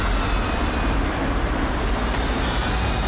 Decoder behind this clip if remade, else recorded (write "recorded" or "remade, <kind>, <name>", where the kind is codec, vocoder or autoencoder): recorded